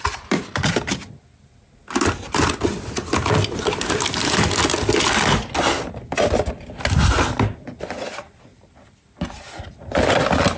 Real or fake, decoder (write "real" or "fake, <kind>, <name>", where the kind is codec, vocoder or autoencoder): real